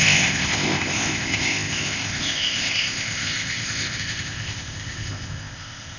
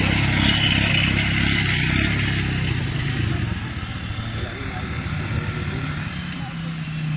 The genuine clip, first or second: second